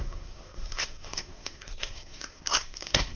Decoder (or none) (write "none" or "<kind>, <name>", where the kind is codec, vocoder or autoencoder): codec, SNAC